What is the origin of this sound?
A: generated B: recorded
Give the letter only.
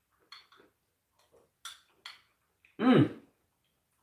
B